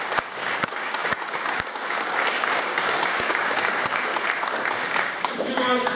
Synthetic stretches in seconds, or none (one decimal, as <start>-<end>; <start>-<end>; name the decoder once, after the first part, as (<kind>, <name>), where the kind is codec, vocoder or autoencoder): 0.0-4.1 (codec, DAC); 4.8-5.9